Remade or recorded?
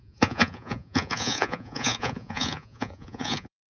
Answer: remade